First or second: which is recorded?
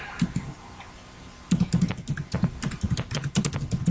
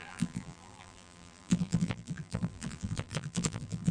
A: first